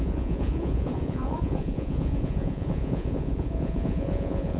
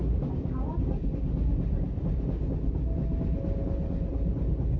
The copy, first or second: first